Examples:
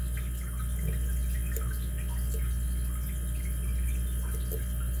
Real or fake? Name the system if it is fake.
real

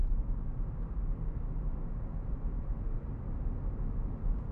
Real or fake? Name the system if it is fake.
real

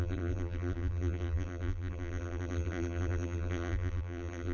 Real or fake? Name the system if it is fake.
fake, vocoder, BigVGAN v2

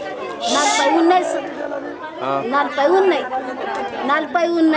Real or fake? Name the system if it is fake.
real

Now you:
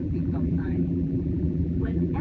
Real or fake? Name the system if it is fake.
fake, vocoder, BigVGAN v2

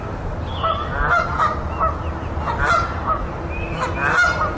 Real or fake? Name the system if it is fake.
real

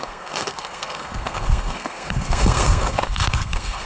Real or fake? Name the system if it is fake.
fake, codec, SNAC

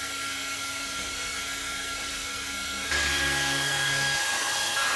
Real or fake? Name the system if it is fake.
fake, codec, SNAC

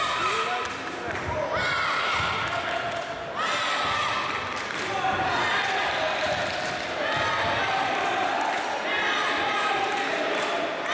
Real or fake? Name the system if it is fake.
real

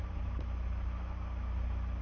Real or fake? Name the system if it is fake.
real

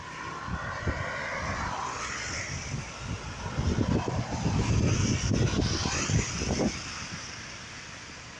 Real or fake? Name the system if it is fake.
real